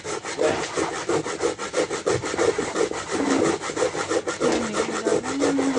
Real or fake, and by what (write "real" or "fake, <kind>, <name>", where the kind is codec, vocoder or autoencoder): real